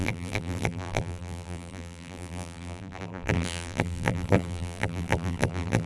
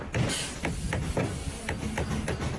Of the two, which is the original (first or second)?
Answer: second